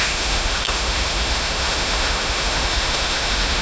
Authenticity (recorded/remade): remade